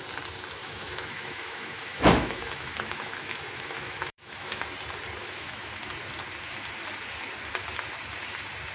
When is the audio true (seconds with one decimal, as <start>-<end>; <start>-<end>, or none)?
0.0-0.6; 4.6-5.2; 5.9-8.7